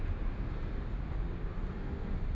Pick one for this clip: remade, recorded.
recorded